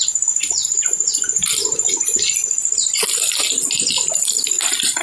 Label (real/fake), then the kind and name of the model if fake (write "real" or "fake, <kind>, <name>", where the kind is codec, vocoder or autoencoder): real